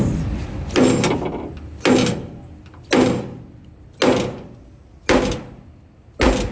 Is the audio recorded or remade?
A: recorded